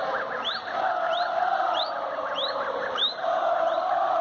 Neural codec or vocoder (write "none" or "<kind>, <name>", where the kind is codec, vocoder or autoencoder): none